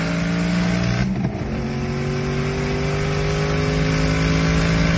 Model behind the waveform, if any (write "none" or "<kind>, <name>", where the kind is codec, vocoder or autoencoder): none